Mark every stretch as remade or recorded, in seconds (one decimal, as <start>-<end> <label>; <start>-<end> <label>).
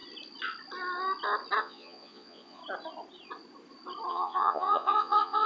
0.0-1.6 recorded; 1.6-2.6 remade; 2.6-4.1 recorded; 4.1-5.5 remade